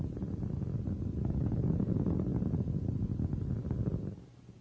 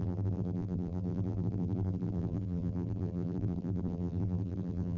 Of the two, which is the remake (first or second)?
second